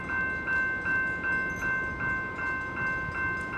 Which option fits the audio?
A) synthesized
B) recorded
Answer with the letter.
B